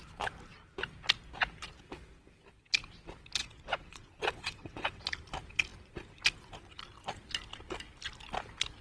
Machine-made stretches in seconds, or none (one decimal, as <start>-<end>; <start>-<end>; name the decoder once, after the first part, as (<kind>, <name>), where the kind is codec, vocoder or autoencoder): 3.4-5.0 (vocoder, WaveNeXt)